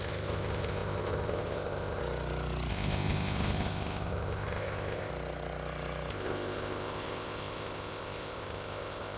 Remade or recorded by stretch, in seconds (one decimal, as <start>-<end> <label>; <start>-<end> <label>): 0.0-2.0 remade; 2.0-2.7 recorded; 2.7-5.1 remade; 5.1-6.1 recorded; 6.1-9.2 remade